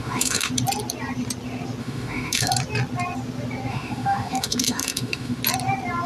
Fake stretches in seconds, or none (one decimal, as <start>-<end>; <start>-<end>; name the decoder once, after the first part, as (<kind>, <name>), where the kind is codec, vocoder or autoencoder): 0.0-0.5 (autoencoder, DAC-VAE); 1.8-2.5; 3.7-5.4